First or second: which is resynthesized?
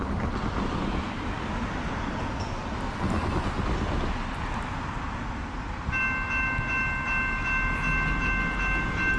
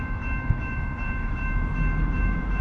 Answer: second